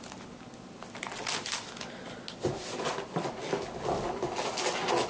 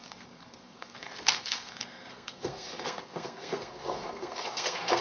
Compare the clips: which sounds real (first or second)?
first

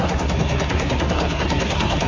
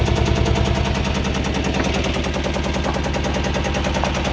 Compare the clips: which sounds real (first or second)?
second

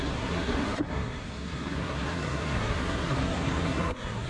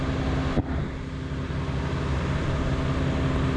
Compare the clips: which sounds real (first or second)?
second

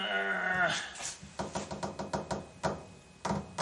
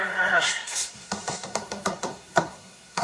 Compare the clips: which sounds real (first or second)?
first